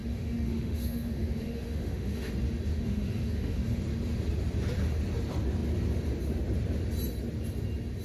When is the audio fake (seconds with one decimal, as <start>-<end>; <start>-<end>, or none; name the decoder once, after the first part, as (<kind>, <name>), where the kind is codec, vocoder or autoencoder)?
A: 0.0-2.3 (autoencoder, DAC-VAE); 2.7-3.8